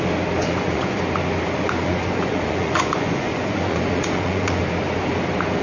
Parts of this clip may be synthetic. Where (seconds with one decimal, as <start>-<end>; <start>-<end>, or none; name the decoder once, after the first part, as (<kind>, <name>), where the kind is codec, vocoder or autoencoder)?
0.4-1.0 (vocoder, Vocos); 1.8-4.6